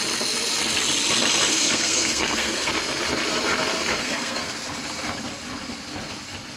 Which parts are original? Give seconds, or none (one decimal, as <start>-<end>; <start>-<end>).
0.0-1.5; 2.7-3.9; 4.5-6.6